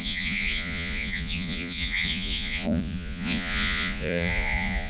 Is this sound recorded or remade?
remade